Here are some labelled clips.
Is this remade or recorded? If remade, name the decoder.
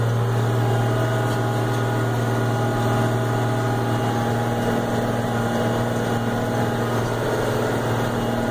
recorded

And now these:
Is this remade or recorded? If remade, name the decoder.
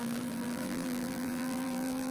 remade, vocoder, BigVGAN v2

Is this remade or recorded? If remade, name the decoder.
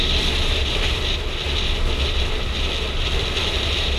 recorded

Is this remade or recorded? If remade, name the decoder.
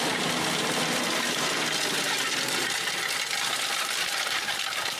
recorded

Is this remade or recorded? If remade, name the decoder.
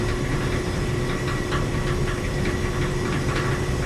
recorded